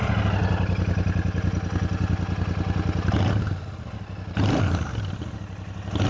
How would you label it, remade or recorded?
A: recorded